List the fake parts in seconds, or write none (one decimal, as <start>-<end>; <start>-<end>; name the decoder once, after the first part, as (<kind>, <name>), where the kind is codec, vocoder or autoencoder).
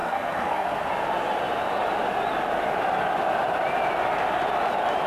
0.0-0.9 (codec, SNAC)